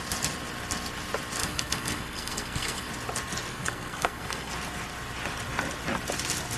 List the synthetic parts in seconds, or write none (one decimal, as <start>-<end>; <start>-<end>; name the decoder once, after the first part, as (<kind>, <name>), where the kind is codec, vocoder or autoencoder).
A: 1.4-2.9 (codec, SNAC); 3.5-4.5